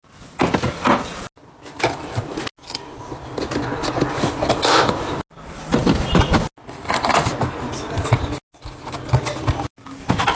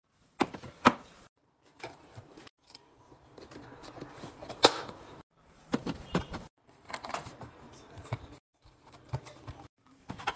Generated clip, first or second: second